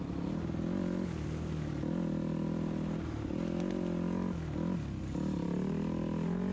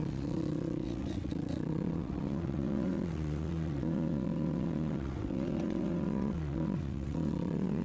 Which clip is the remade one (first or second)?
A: second